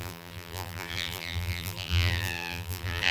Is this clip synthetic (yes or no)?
yes